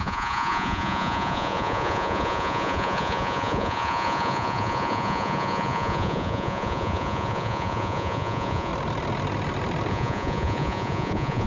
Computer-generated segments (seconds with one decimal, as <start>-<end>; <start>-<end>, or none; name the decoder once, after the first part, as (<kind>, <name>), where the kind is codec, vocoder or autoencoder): 0.0-8.7 (vocoder, Vocos); 9.9-11.5